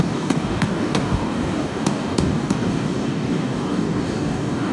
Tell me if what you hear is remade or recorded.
remade